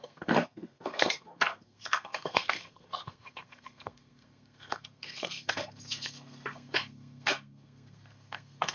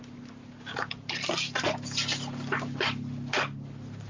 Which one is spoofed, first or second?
first